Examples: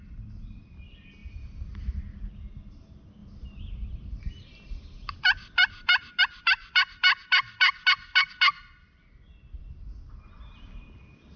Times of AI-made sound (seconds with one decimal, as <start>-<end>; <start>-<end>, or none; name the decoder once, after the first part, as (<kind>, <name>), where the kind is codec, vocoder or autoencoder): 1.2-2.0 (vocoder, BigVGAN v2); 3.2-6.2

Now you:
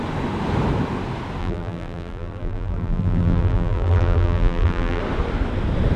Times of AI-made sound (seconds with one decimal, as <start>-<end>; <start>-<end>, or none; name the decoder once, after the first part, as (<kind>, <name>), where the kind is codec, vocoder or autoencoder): 1.4-5.0 (vocoder, BigVGAN v2)

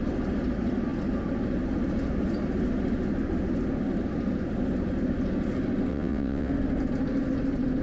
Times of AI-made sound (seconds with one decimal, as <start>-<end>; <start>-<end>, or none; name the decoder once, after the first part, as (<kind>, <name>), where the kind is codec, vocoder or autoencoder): 5.9-6.5 (vocoder, WaveNeXt)